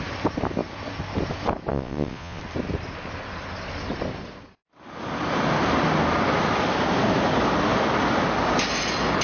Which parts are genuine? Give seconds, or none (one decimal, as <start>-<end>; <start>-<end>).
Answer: 0.0-1.7; 2.4-9.2